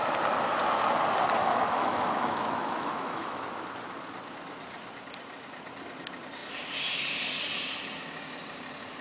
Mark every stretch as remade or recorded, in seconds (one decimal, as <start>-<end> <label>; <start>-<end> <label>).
0.0-1.4 recorded; 1.4-3.4 remade; 3.4-9.0 recorded

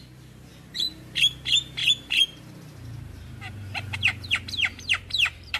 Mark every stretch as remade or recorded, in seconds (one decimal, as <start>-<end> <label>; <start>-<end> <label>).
0.0-5.6 remade

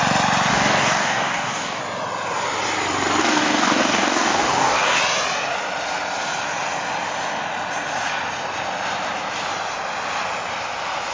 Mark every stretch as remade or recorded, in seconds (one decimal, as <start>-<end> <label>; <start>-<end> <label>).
0.0-0.5 recorded; 0.5-1.8 remade; 1.8-3.2 recorded; 3.2-5.0 remade; 5.0-11.1 recorded

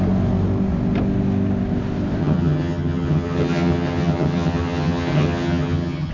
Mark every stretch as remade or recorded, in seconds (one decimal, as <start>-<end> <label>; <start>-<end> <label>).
0.0-2.2 recorded; 2.2-6.1 remade

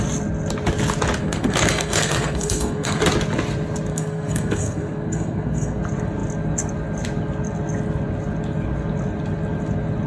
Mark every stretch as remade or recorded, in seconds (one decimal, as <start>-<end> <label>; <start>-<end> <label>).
0.0-1.2 recorded; 1.2-3.0 remade; 3.0-3.9 recorded; 3.9-5.8 remade; 5.8-10.1 recorded

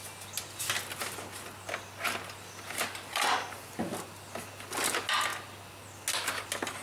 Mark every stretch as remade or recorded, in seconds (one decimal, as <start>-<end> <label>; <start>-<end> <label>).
0.0-6.8 recorded